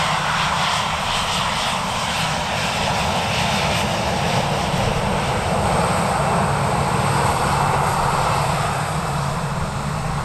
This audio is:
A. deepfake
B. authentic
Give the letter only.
B